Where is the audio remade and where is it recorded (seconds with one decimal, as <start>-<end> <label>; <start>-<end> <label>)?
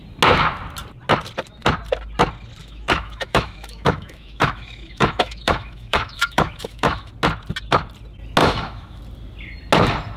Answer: 0.0-2.6 recorded; 2.6-7.1 remade; 7.1-8.4 recorded; 8.4-9.0 remade; 9.0-10.2 recorded